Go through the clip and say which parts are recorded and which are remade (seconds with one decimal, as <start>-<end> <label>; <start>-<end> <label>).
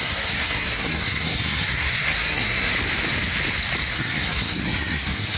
0.0-2.7 remade; 2.7-3.9 recorded; 3.9-5.4 remade